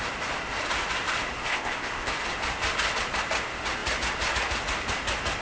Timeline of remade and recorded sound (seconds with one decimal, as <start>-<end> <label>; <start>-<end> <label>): 0.0-1.5 recorded; 1.5-2.1 remade; 2.1-5.4 recorded